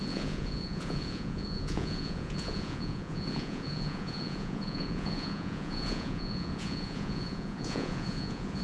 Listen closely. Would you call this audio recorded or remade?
remade